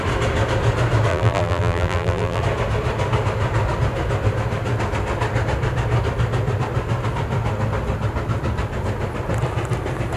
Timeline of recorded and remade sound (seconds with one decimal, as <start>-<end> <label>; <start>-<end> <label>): 0.0-1.1 recorded; 1.1-2.4 remade; 2.4-10.2 recorded